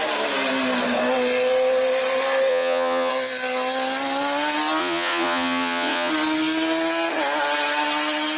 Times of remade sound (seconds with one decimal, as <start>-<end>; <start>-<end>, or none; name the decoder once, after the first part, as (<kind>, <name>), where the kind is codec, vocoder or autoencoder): 2.5-3.1 (vocoder, Vocos); 4.8-6.1